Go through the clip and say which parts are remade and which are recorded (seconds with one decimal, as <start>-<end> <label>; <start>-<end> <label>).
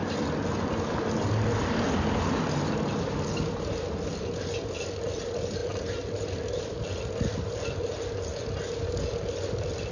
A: 0.0-9.9 recorded